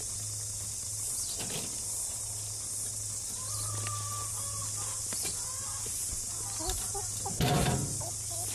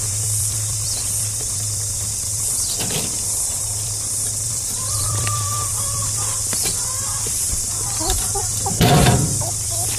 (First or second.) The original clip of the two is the first